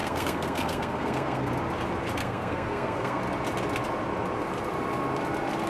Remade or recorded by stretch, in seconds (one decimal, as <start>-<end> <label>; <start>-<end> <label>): 0.0-1.5 remade; 1.5-2.2 recorded; 2.2-3.2 remade; 3.2-5.7 recorded